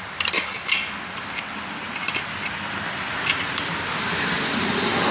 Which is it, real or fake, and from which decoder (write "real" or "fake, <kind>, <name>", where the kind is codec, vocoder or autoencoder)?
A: real